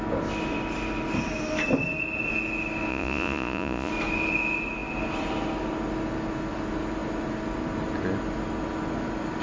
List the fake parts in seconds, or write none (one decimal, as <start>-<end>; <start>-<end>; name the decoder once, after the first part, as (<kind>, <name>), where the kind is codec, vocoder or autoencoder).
2.9-3.9 (vocoder, Vocos)